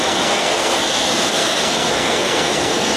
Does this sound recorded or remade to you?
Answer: remade